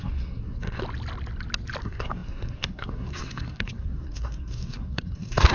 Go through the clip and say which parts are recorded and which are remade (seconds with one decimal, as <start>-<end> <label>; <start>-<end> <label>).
0.0-0.8 remade; 0.8-1.8 recorded; 1.8-5.5 remade